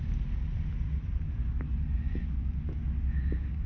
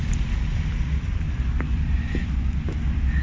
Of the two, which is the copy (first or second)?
second